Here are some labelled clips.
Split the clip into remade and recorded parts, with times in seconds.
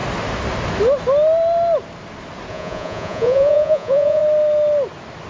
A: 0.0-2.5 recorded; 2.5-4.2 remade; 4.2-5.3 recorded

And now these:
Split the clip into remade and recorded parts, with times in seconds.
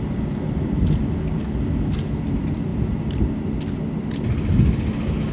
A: 0.0-5.3 recorded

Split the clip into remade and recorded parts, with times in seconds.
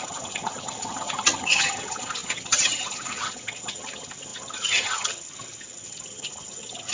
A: 0.0-6.9 remade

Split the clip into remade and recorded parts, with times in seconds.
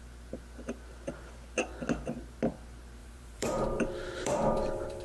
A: 0.0-3.0 recorded; 3.0-5.0 remade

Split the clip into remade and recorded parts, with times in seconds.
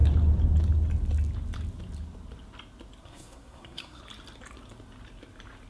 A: 0.0-3.0 recorded; 3.0-4.0 remade; 4.0-5.7 recorded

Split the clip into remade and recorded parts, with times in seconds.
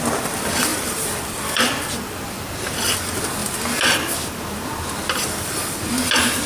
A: 0.0-0.7 recorded; 0.7-3.0 remade; 3.0-6.5 recorded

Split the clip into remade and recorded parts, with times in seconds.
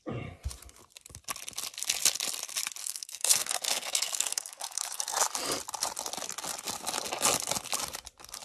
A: 0.0-2.8 recorded; 2.8-5.2 remade; 5.2-8.4 recorded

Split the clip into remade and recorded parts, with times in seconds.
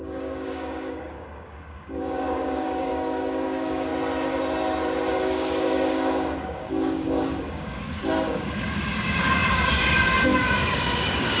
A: 0.0-3.9 remade; 3.9-5.1 recorded; 5.1-11.4 remade